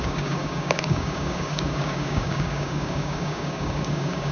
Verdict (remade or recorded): remade